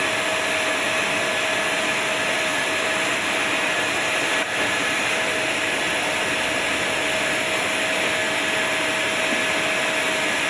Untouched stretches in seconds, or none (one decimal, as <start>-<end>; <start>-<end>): 0.0-2.5; 6.4-10.5